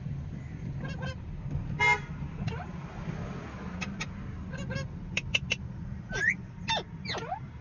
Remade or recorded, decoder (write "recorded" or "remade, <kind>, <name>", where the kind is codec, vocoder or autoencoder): recorded